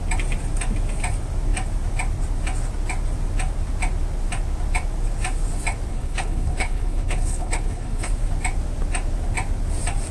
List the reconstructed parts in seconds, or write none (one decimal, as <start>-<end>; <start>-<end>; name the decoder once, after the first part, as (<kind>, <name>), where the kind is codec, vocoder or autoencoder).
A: 5.9-8.1 (codec, HILCodec)